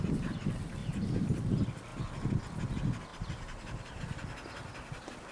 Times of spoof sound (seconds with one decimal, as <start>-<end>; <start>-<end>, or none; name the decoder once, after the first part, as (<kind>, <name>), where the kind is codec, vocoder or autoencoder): 0.8-1.4 (vocoder, BigVGAN v2); 3.1-4.0